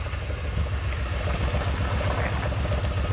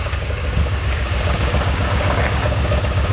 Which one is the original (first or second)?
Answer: first